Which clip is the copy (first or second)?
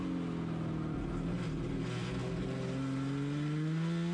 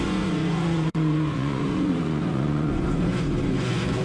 second